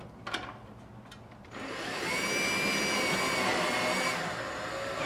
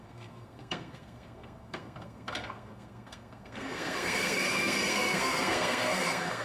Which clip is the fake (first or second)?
second